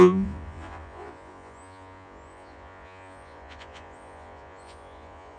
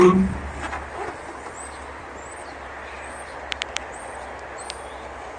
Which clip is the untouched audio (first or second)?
second